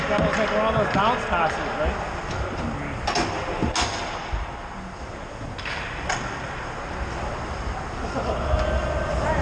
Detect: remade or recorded recorded